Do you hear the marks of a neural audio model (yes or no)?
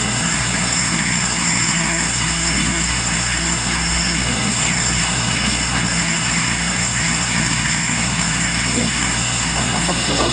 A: yes